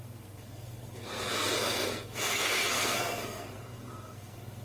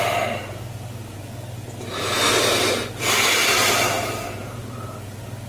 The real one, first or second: second